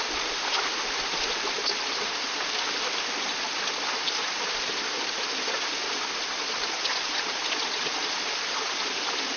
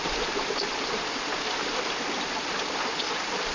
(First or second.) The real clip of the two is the first